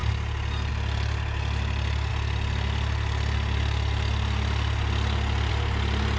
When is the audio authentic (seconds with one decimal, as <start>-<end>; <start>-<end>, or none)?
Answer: 0.0-6.2